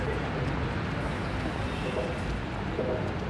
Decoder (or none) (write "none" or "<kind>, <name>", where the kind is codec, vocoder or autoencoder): none